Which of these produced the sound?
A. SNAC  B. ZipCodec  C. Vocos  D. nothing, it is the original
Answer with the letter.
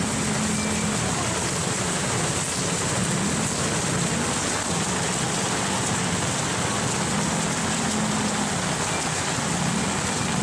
D